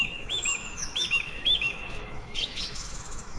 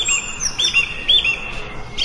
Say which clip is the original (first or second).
second